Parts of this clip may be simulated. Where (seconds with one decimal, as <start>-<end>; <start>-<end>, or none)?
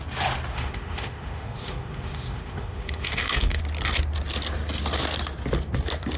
0.5-3.6